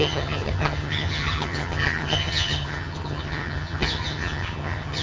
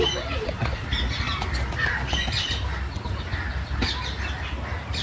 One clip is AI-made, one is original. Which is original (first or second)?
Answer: second